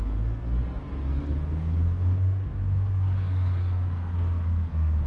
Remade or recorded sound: remade